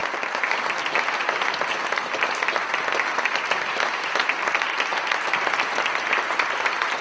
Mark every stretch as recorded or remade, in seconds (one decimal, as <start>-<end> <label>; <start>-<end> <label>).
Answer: 0.0-7.0 recorded